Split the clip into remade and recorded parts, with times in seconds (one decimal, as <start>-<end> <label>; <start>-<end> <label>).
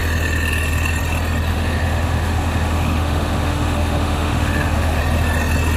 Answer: 0.0-1.5 recorded; 1.5-5.0 remade; 5.0-5.8 recorded